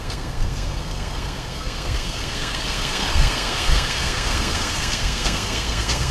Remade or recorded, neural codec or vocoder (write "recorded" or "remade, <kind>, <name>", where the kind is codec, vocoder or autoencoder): remade, codec, SNAC